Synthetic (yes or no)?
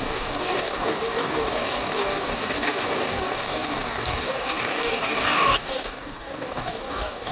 yes